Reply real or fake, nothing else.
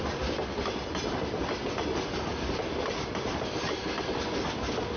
real